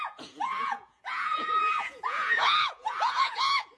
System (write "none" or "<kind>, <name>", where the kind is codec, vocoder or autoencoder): vocoder, Vocos